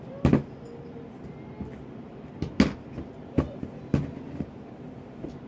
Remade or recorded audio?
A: recorded